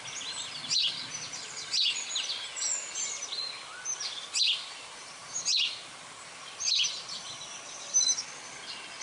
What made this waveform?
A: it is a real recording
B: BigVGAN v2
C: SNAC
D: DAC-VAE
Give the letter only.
A